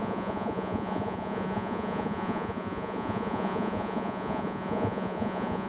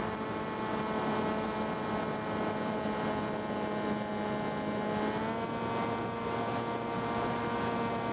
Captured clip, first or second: second